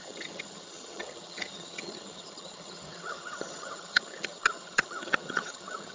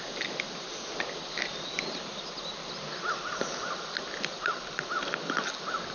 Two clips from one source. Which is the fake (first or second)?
first